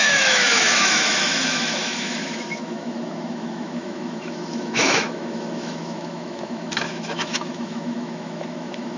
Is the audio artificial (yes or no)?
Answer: yes